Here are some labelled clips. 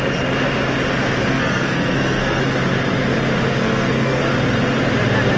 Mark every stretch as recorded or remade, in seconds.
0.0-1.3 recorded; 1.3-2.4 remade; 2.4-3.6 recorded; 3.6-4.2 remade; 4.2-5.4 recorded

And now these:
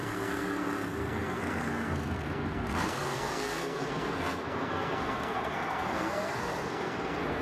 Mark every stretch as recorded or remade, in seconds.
0.0-7.4 remade

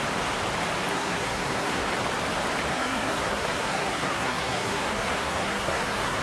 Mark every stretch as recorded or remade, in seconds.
0.0-0.9 recorded; 0.9-1.8 remade; 1.8-2.7 recorded; 2.7-6.2 remade